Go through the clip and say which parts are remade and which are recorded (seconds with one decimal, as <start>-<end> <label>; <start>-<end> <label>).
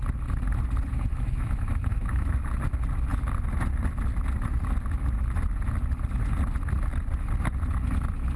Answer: 0.0-1.1 recorded; 1.1-2.5 remade; 2.5-8.4 recorded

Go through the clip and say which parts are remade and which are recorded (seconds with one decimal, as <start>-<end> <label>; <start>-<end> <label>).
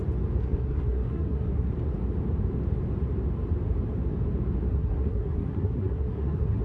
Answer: 0.0-0.4 recorded; 0.4-1.7 remade; 1.7-4.7 recorded; 4.7-6.6 remade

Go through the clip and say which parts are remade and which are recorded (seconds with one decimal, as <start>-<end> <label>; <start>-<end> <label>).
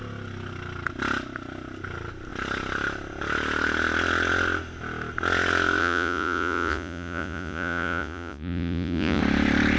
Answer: 0.0-5.8 recorded; 5.8-9.2 remade; 9.2-9.8 recorded